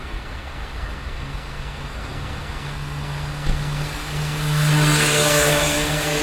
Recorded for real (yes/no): no